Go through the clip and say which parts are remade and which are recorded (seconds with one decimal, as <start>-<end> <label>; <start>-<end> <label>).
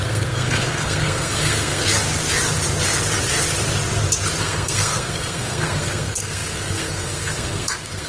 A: 0.0-1.8 remade; 1.8-4.4 recorded; 4.4-8.1 remade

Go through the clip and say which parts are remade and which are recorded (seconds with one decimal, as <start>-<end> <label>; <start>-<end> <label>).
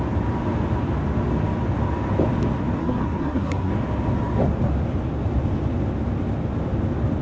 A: 0.0-2.8 recorded; 2.8-3.7 remade; 3.7-7.2 recorded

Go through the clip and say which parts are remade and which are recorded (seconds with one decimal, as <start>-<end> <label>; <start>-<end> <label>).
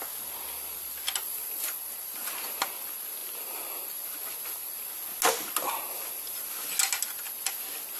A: 0.0-8.0 recorded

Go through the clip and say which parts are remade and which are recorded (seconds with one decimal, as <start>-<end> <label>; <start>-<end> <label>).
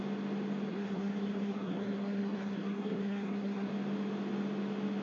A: 0.0-0.7 recorded; 0.7-3.7 remade; 3.7-5.0 recorded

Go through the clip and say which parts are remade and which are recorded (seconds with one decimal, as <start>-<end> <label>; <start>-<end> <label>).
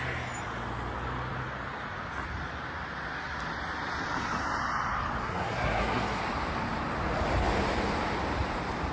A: 0.0-5.2 recorded; 5.2-6.2 remade; 6.2-8.9 recorded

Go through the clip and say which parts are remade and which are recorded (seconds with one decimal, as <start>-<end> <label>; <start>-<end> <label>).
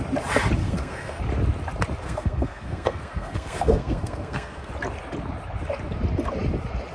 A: 0.0-0.6 recorded; 0.6-1.2 remade; 1.2-2.0 recorded; 2.0-4.7 remade; 4.7-6.9 recorded